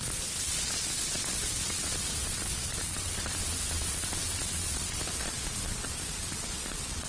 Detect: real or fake fake